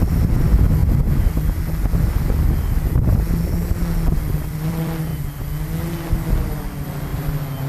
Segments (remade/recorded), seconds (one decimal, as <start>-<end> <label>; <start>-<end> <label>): 0.0-0.8 remade; 0.8-4.4 recorded; 4.4-5.1 remade; 5.1-6.5 recorded; 6.5-7.1 remade; 7.1-7.7 recorded